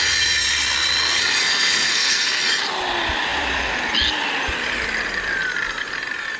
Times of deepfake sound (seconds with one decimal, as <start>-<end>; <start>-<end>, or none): 1.4-2.4